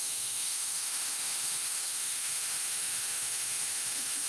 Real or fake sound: fake